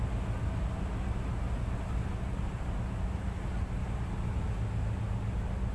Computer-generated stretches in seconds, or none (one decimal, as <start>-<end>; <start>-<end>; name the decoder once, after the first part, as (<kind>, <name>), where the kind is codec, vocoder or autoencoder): 2.1-3.2 (vocoder, BigVGAN v2); 3.8-4.5